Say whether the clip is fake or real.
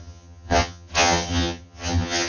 fake